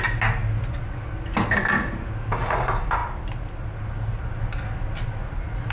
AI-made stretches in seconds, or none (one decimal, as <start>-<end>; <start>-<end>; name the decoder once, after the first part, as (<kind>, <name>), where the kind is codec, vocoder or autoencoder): none